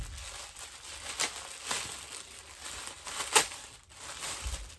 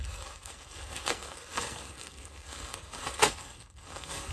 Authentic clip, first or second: first